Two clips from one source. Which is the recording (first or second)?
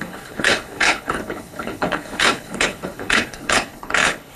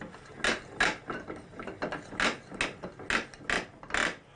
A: second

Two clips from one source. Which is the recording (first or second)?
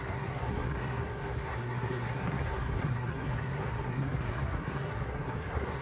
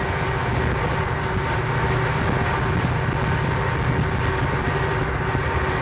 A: second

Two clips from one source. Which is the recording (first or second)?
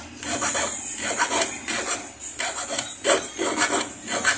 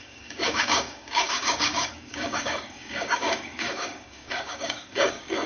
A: first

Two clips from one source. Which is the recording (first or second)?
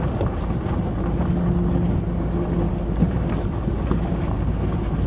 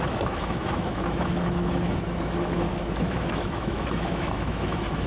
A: first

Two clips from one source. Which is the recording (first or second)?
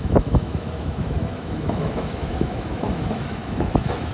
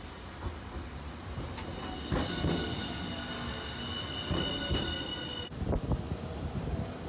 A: second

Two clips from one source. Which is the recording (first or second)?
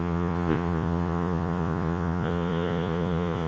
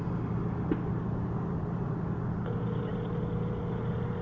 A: second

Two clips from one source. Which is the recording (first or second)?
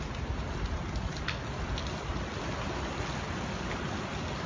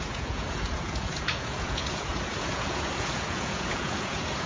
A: first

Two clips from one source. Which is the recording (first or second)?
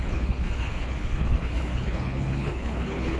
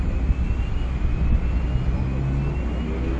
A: second